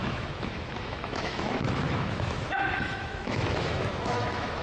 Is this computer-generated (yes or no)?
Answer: yes